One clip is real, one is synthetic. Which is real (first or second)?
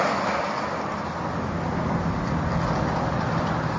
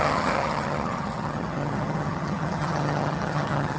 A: first